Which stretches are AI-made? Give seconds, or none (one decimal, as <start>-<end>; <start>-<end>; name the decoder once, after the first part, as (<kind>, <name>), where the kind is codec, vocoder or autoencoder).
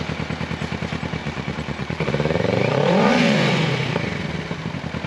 1.2-3.9 (vocoder, Vocos)